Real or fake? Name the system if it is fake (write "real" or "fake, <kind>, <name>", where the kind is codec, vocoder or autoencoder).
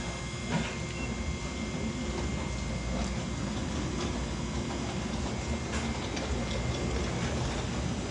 real